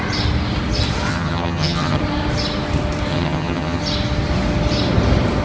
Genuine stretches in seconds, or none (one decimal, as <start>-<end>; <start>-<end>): 0.0-1.1; 2.0-3.1; 3.8-5.4